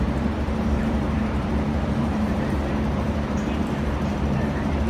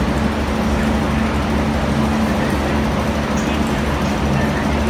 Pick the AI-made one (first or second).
first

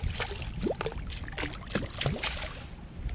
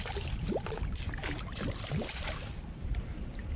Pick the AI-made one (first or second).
second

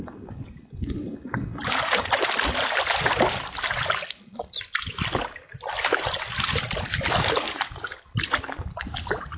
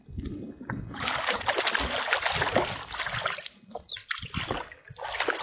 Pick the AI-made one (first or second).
first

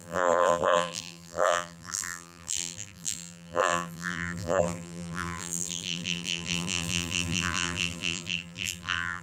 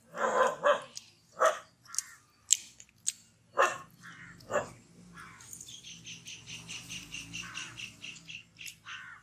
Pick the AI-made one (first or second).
first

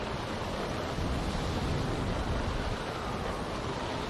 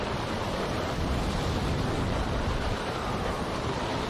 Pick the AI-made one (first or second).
second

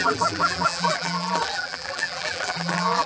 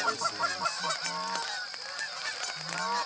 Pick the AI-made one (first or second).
first